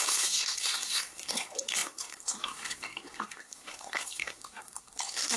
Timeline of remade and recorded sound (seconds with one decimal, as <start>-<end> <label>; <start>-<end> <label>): 0.0-5.4 remade